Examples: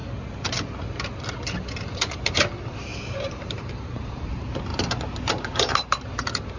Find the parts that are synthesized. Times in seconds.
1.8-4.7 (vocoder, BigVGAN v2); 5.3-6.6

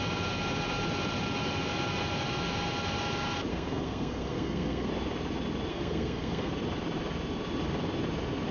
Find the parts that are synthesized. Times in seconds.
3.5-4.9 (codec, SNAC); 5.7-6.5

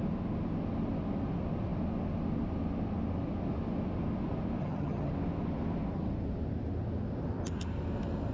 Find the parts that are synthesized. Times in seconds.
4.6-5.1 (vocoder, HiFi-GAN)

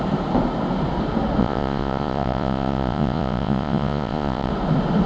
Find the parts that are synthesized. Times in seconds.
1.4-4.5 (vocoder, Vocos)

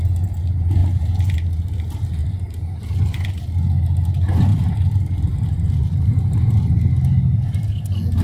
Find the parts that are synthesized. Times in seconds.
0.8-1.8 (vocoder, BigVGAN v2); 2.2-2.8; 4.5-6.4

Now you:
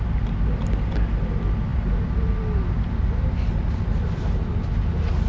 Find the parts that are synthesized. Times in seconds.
none

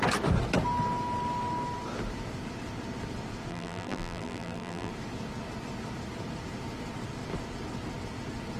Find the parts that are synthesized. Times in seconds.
3.5-4.9 (vocoder, BigVGAN v2)

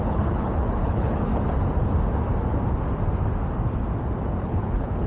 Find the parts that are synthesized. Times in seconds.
0.0-1.3 (codec, HILCodec); 4.4-5.1